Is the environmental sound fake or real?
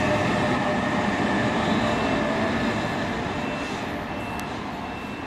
real